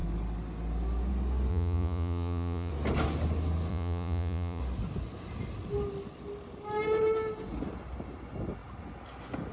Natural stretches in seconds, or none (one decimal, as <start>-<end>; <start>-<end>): 0.0-1.5; 2.7-3.7; 4.6-9.5